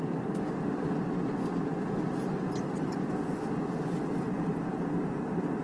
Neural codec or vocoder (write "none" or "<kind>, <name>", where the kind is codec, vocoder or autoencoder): none